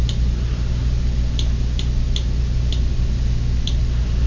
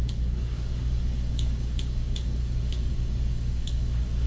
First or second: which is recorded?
first